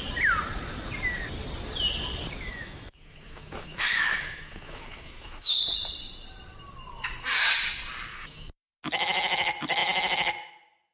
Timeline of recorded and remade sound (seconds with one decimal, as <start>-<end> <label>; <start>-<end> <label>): 0.0-2.5 recorded; 2.5-5.6 remade; 5.6-8.1 recorded; 8.1-8.7 remade; 8.7-10.9 recorded